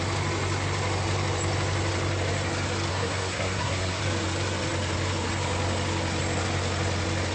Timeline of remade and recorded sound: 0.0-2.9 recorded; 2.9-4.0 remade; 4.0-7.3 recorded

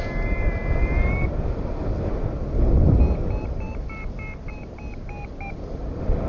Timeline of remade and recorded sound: 0.0-6.3 recorded

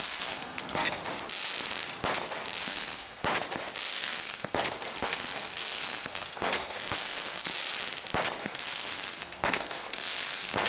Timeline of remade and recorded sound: 0.0-1.0 remade; 1.0-2.6 recorded; 2.6-3.2 remade; 3.2-3.9 recorded; 3.9-7.5 remade; 7.5-8.4 recorded; 8.4-10.7 remade